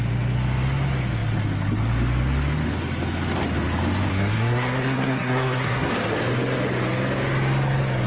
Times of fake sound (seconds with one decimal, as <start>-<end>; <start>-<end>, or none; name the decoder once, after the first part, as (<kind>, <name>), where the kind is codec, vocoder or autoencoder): 4.1-5.9 (codec, SNAC)